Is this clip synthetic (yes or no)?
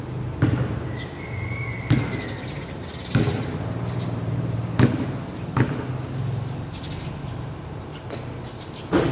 no